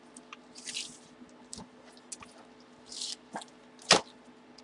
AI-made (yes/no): no